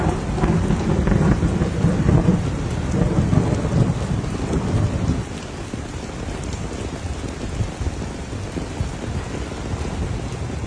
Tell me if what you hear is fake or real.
real